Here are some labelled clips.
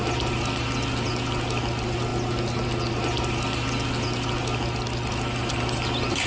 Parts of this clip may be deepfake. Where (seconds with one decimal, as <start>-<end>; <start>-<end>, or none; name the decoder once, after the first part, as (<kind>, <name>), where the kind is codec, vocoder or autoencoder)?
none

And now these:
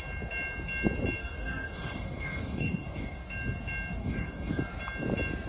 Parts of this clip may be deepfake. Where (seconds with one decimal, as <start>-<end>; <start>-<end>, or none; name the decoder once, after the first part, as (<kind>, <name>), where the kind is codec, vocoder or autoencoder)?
1.2-3.2 (codec, DAC); 4.0-4.6

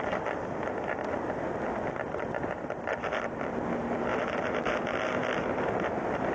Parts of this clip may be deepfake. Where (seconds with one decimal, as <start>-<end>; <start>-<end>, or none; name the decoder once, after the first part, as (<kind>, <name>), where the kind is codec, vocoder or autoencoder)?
4.1-4.7 (vocoder, BigVGAN v2)

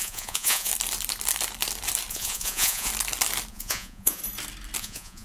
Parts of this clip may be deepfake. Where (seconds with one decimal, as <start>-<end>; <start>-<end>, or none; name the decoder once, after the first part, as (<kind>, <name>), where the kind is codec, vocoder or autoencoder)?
0.0-0.7 (vocoder, Vocos); 2.1-2.9; 3.5-4.2; 4.8-5.2

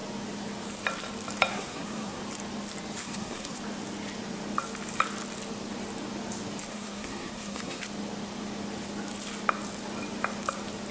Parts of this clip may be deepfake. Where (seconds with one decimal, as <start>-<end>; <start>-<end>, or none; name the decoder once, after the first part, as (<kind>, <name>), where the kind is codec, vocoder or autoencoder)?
1.5-2.2 (codec, SNAC); 3.0-3.6; 6.7-7.8